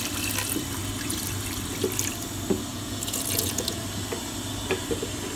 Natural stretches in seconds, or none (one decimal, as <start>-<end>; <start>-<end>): 0.0-2.7; 3.8-5.4